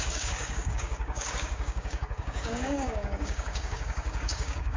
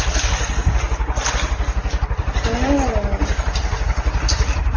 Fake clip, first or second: first